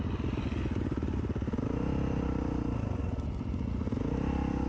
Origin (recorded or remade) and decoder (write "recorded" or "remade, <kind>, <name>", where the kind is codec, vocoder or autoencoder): recorded